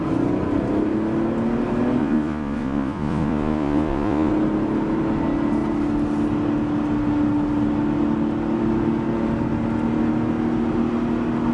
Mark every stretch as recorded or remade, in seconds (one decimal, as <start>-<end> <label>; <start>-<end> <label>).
0.0-2.0 recorded; 2.0-4.3 remade; 4.3-11.5 recorded